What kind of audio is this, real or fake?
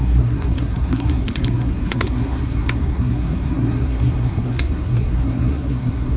fake